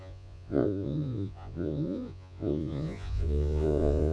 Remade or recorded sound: remade